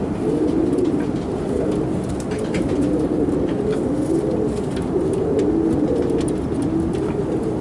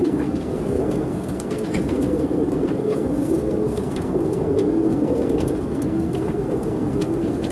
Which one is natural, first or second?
first